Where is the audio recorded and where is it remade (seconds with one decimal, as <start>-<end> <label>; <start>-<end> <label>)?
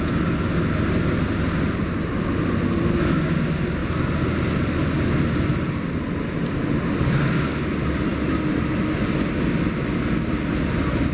0.0-11.1 recorded